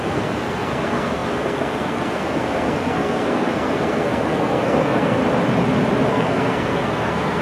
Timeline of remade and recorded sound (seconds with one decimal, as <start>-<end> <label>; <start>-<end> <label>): 0.0-5.2 remade; 5.2-6.1 recorded; 6.1-7.4 remade